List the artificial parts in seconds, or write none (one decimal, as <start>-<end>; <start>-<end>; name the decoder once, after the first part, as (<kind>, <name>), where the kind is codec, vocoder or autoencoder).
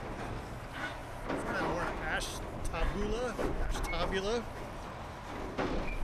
none